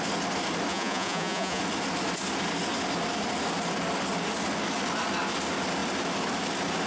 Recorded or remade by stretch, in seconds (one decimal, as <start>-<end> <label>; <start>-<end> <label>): 0.0-0.7 recorded; 0.7-1.6 remade; 1.6-6.9 recorded